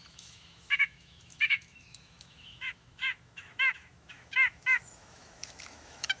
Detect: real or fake fake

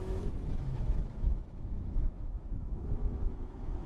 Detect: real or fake fake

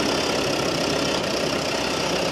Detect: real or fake real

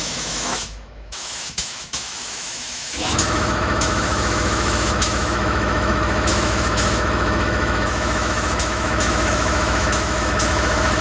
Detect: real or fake fake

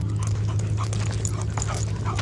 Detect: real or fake real